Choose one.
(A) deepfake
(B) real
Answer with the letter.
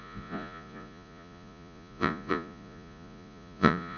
A